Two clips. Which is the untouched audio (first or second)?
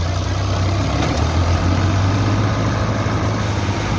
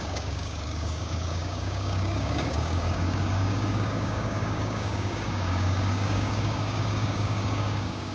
first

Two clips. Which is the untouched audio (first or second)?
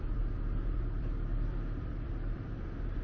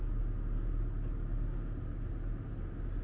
second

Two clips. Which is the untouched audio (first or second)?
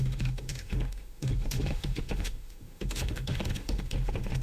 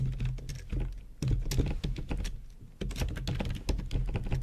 second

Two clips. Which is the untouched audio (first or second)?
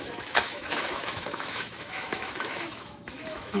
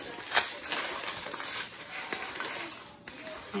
second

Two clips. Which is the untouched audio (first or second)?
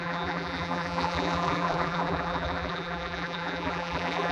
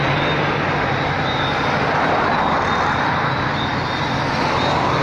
second